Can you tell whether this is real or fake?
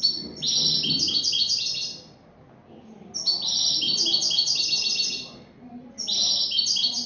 real